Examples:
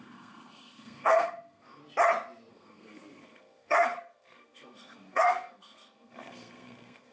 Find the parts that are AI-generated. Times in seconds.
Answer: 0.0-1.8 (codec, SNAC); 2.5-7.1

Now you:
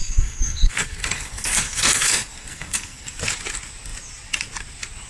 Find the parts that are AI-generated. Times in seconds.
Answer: 0.0-3.1 (codec, SNAC)

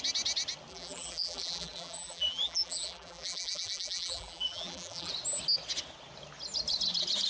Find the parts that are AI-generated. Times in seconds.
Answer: 0.7-5.1 (vocoder, BigVGAN v2)

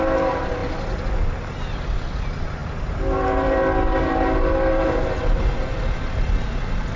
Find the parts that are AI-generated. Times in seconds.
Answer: none

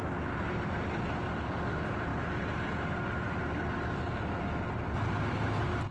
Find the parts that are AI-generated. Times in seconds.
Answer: none

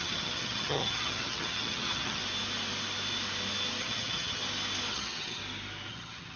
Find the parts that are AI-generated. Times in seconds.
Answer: 0.0-2.2 (vocoder, HiFi-GAN); 3.8-4.4; 4.9-5.4; 5.9-6.4

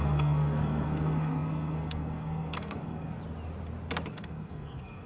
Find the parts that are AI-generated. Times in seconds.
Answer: 0.0-3.2 (codec, SNAC); 4.1-5.1

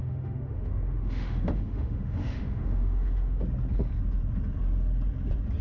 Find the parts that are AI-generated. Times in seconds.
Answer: 0.0-3.4 (autoencoder, DAC-VAE)